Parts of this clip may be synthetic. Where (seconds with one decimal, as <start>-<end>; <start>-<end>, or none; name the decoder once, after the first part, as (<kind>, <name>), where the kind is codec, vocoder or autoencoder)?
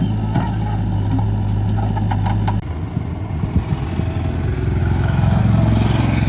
4.8-5.4 (autoencoder, DAC-VAE)